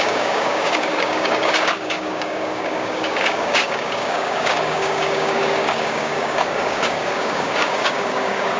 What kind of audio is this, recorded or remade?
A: remade